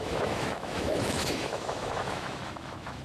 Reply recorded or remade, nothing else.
remade